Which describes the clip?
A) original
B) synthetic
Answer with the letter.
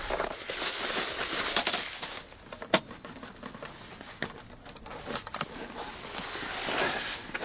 A